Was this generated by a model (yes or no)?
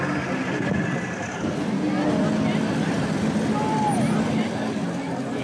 no